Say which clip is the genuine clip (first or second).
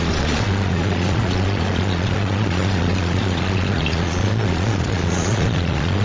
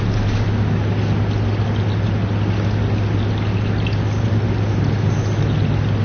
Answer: second